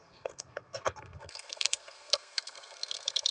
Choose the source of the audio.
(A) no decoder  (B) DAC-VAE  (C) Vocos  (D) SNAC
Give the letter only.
D